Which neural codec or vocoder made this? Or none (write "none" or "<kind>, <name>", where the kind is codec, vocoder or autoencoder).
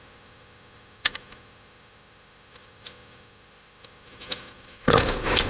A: autoencoder, DAC-VAE